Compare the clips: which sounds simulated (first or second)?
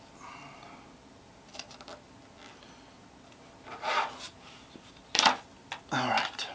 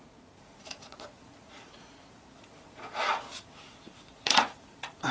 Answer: second